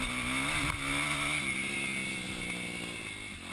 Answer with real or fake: real